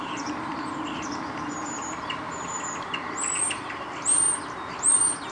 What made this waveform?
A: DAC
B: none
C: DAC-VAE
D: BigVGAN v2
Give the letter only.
B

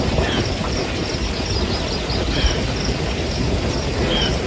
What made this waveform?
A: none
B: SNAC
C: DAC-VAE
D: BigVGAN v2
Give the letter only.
A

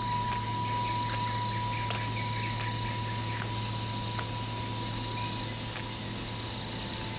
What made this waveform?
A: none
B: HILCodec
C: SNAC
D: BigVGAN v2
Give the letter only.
A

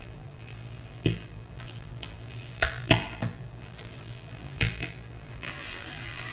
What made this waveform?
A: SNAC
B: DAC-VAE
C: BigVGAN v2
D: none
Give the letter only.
C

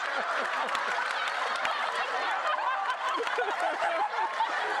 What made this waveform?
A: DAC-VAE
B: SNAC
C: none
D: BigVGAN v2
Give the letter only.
C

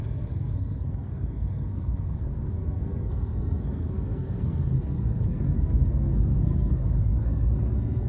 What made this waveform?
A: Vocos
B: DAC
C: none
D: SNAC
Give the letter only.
D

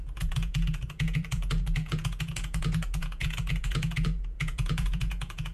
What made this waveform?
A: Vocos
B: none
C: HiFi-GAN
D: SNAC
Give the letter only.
A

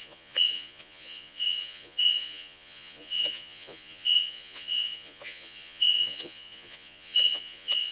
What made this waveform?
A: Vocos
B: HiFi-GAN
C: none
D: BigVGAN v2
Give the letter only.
A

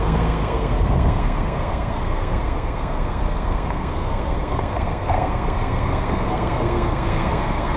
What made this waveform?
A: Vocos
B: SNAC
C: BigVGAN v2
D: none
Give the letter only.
B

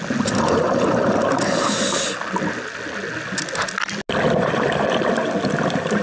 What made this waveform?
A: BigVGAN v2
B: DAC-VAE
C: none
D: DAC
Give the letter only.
C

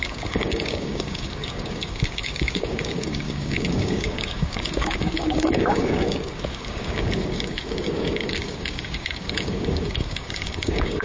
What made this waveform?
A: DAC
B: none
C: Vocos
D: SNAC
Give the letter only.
A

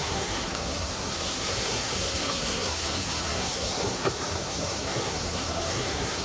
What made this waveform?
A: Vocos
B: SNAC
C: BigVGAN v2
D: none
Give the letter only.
B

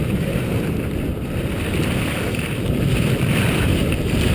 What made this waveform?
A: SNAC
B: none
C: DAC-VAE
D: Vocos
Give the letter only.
B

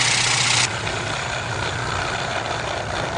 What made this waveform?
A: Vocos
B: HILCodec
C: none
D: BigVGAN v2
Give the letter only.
C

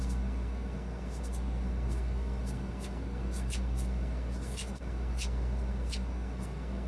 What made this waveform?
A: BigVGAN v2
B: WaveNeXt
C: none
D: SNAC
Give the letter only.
D